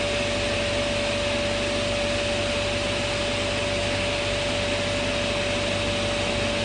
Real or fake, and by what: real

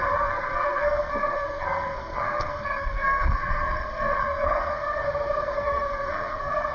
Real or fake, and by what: fake, codec, SNAC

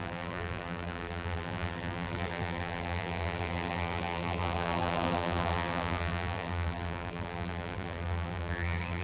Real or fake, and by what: fake, vocoder, BigVGAN v2